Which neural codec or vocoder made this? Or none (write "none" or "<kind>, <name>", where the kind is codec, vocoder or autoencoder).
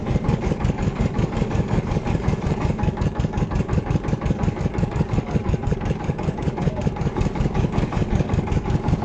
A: codec, DAC